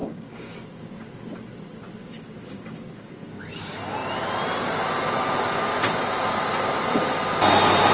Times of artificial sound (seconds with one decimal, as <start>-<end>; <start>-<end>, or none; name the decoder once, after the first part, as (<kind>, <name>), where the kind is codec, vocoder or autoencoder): 0.0-0.5 (codec, DAC); 2.0-3.4